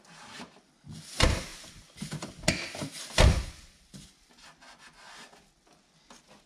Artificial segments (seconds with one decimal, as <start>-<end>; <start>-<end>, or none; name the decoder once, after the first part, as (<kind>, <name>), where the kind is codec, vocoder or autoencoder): none